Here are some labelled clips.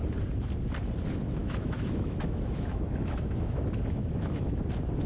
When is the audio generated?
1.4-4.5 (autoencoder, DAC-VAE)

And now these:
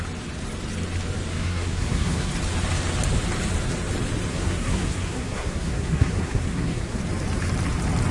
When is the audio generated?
1.3-2.3 (codec, SNAC); 4.3-7.0

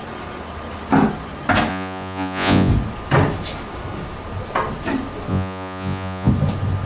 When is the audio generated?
1.7-2.7 (vocoder, Vocos); 5.3-6.3

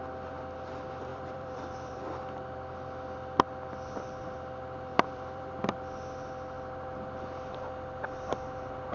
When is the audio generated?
1.1-2.0 (vocoder, BigVGAN v2); 4.9-5.6

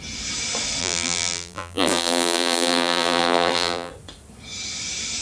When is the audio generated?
0.8-3.9 (vocoder, BigVGAN v2)

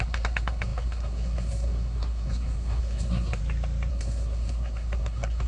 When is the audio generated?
0.0-3.4 (codec, SNAC); 3.9-5.5

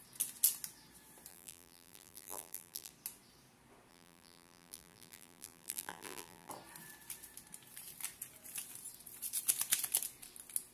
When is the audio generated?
1.3-2.9 (vocoder, BigVGAN v2); 3.9-6.5

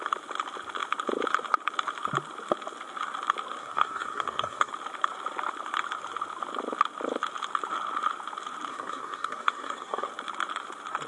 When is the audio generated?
3.6-4.7 (codec, SNAC); 8.7-10.1